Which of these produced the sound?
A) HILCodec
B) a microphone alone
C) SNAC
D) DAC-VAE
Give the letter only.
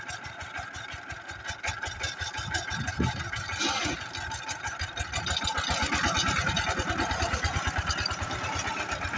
B